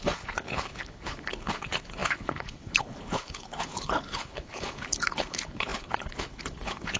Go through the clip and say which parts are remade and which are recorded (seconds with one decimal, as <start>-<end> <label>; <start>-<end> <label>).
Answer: 0.0-7.0 remade

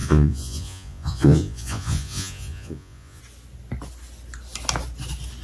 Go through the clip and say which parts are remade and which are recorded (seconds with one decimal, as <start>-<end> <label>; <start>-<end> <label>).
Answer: 0.0-3.2 remade; 3.2-5.4 recorded

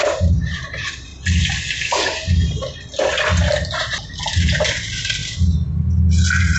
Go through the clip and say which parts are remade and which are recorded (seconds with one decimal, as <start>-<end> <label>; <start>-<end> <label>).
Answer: 0.0-1.1 remade; 1.1-4.3 recorded; 4.3-5.2 remade; 5.2-6.6 recorded

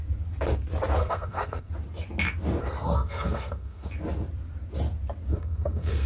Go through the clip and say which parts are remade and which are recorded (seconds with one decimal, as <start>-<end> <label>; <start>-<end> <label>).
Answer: 0.0-1.0 recorded; 1.0-1.7 remade; 1.7-2.6 recorded; 2.6-3.9 remade; 3.9-5.3 recorded; 5.3-6.1 remade

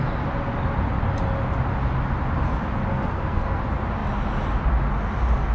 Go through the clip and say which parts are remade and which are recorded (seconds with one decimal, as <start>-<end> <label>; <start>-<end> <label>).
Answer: 0.0-2.9 recorded; 2.9-3.6 remade; 3.6-5.5 recorded

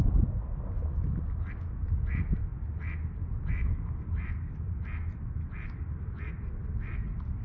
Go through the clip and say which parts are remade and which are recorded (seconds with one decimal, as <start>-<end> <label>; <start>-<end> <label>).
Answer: 0.0-7.4 recorded